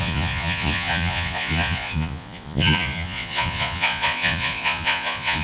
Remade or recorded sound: remade